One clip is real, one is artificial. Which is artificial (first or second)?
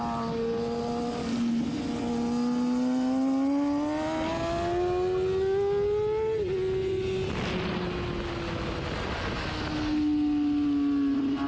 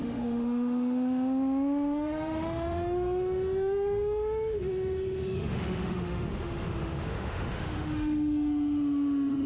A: second